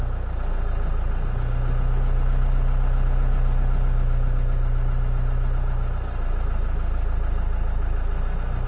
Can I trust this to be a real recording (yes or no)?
yes